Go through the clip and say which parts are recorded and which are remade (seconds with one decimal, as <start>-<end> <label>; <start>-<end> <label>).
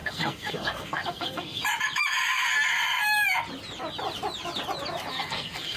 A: 0.0-1.6 remade; 1.6-5.1 recorded; 5.1-5.8 remade